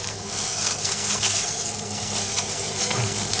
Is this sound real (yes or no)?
no